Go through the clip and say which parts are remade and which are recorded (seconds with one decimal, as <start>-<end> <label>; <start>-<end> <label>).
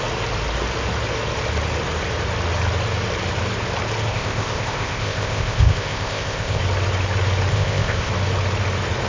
0.0-4.1 recorded; 4.1-6.6 remade; 6.6-7.5 recorded; 7.5-8.1 remade; 8.1-9.1 recorded